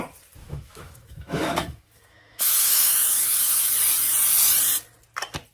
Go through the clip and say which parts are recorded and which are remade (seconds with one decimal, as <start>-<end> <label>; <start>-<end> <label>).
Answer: 0.0-0.4 recorded; 0.4-3.7 remade; 3.7-5.5 recorded